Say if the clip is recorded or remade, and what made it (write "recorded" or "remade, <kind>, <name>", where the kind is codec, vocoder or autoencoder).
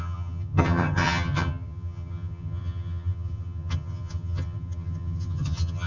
remade, vocoder, HiFi-GAN